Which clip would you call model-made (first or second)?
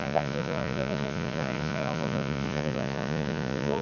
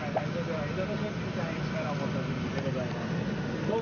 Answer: first